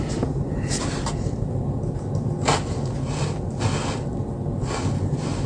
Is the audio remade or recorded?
recorded